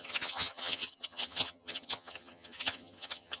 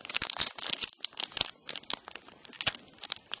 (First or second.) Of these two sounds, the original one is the second